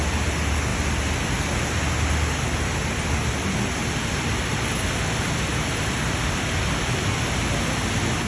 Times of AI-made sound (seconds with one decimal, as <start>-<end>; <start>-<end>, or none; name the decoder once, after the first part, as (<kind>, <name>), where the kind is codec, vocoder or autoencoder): none